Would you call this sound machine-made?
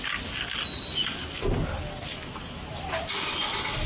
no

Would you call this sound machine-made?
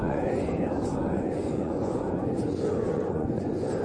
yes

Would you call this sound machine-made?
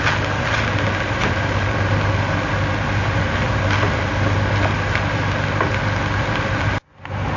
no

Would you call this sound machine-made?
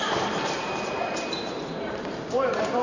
yes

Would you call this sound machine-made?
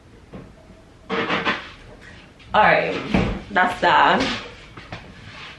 no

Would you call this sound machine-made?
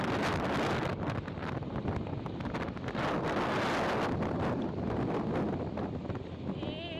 no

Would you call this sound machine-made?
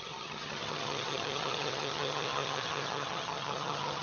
yes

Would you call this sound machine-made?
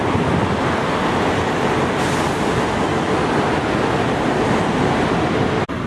no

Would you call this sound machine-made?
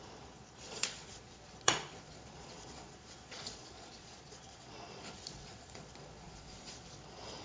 yes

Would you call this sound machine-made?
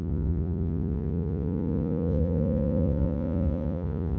yes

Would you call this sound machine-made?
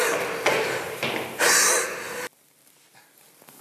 no